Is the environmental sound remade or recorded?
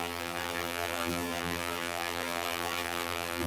remade